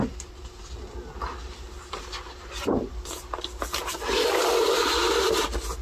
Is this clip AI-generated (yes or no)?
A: no